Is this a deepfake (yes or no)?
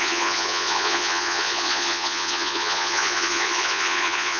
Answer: yes